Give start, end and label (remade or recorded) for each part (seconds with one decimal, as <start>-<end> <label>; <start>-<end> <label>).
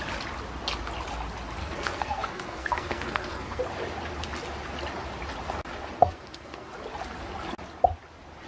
0.0-1.6 recorded; 1.6-3.6 remade; 3.6-6.0 recorded; 6.0-6.7 remade; 6.7-8.5 recorded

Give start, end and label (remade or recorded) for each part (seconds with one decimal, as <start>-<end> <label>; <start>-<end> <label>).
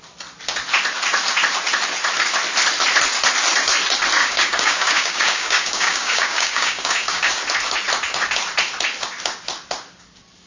0.0-4.2 recorded; 4.2-7.3 remade; 7.3-10.5 recorded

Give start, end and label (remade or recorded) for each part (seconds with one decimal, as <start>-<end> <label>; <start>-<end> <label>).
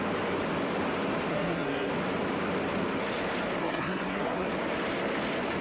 0.0-1.3 recorded; 1.3-1.9 remade; 1.9-3.6 recorded; 3.6-4.5 remade; 4.5-5.6 recorded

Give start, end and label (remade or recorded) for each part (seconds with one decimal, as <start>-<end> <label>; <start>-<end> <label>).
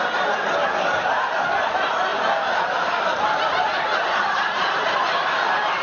0.0-2.1 recorded; 2.1-5.1 remade; 5.1-5.8 recorded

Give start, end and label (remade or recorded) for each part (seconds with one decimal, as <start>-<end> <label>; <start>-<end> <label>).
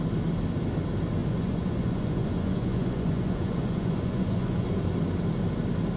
0.0-1.2 recorded; 1.2-4.8 remade; 4.8-6.0 recorded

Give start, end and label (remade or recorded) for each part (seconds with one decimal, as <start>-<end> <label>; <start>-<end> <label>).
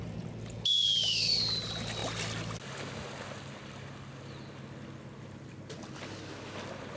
0.0-7.0 recorded